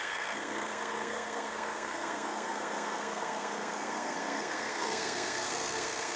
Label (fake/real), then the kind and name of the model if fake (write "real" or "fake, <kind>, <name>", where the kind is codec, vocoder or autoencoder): fake, codec, SNAC